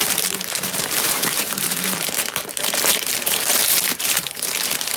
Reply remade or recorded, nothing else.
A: remade